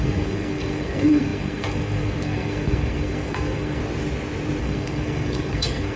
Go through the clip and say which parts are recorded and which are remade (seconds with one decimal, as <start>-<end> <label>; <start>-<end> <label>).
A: 0.0-3.8 remade; 3.8-4.6 recorded; 4.6-6.0 remade